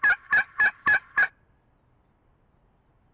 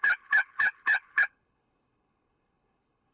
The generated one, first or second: second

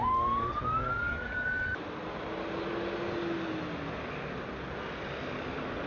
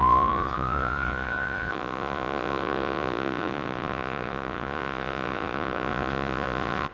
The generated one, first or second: second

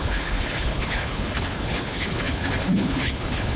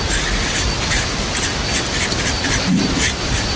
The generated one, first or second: first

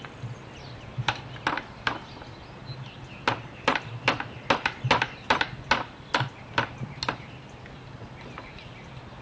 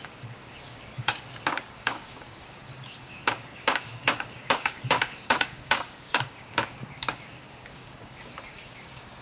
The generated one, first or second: second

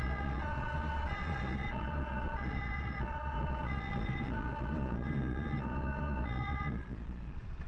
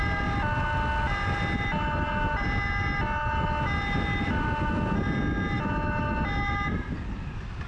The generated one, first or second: first